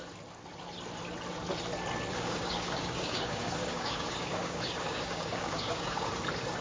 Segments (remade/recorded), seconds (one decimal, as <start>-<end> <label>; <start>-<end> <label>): 0.0-2.1 recorded; 2.1-6.1 remade; 6.1-6.6 recorded